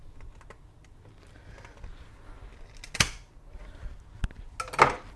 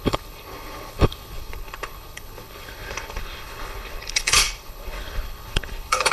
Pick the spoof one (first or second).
second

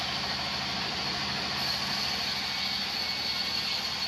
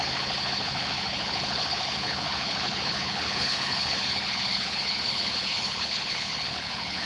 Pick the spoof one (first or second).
second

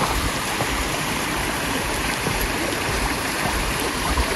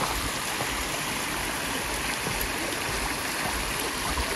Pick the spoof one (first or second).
first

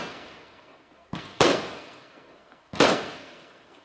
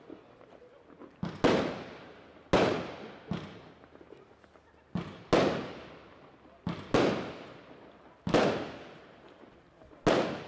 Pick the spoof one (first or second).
first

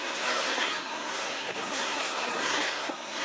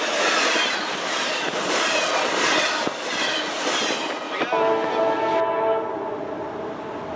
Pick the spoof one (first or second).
first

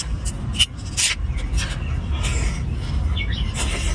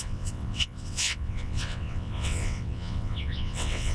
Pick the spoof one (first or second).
second